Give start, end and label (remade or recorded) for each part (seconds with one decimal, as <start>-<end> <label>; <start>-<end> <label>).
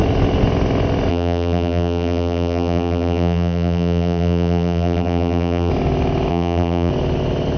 0.0-1.1 recorded; 1.1-5.7 remade; 5.7-6.3 recorded; 6.3-6.9 remade; 6.9-7.6 recorded